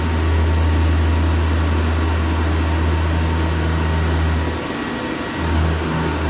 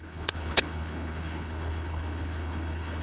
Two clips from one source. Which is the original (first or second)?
first